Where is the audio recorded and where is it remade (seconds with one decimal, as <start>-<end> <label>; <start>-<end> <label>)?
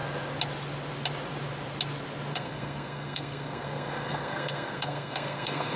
0.0-2.3 recorded; 2.3-5.8 remade